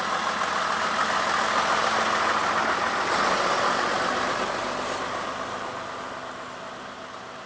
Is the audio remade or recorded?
recorded